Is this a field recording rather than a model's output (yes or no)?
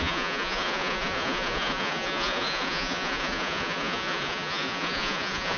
no